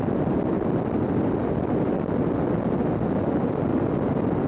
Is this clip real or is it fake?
real